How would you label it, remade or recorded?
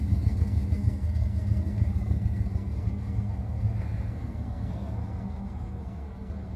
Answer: remade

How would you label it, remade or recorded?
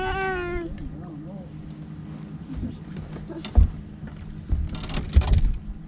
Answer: recorded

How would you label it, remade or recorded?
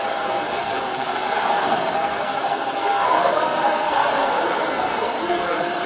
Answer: remade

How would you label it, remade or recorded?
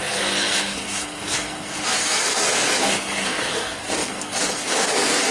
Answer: remade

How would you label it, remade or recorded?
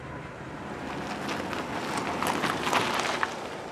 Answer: recorded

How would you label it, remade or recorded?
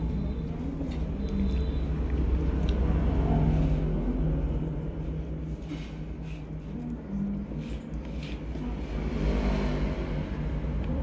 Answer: recorded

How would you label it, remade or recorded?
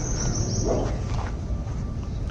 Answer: recorded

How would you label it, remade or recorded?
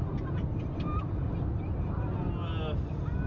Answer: recorded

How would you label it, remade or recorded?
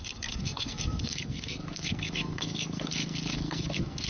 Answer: remade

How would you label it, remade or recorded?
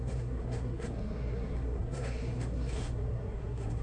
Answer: remade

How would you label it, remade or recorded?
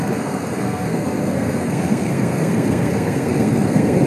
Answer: remade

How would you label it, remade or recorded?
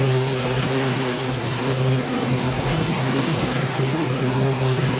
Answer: remade